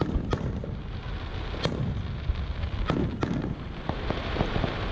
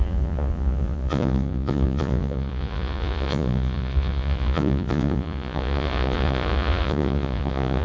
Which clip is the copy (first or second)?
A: second